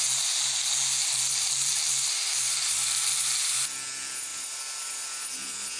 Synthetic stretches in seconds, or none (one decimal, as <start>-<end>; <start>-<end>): 1.0-3.2